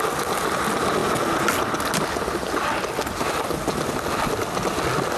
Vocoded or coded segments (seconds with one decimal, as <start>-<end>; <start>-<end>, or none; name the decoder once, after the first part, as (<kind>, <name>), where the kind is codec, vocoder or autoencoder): none